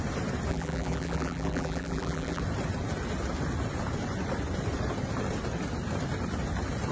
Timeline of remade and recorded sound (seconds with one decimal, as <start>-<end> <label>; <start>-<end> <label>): 0.0-0.5 recorded; 0.5-2.4 remade; 2.4-6.9 recorded

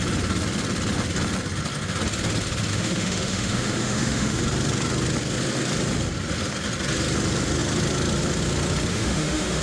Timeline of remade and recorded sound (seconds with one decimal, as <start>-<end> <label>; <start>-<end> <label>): 0.0-2.7 recorded; 2.7-4.4 remade; 4.4-8.9 recorded; 8.9-9.6 remade